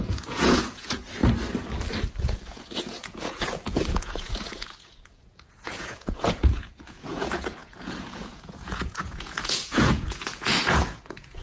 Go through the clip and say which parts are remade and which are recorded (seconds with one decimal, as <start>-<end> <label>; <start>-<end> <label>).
0.0-1.2 remade; 1.2-2.2 recorded; 2.2-11.4 remade